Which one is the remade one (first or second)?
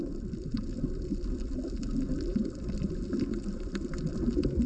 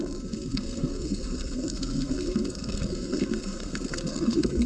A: second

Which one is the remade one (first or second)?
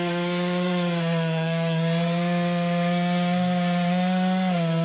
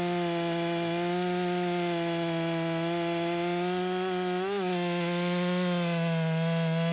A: first